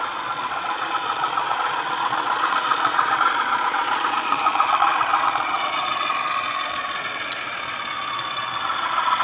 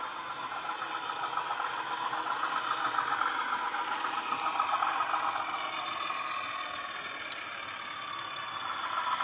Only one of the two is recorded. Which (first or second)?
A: second